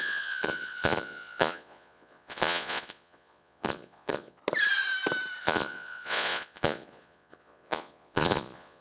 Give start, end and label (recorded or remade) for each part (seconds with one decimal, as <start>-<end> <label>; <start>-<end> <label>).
0.0-4.4 remade; 4.4-5.4 recorded; 5.4-8.8 remade